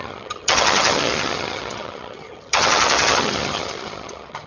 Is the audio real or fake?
fake